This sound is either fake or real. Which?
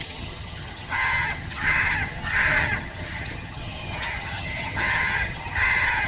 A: fake